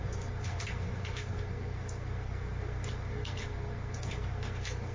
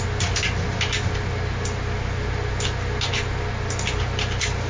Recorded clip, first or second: second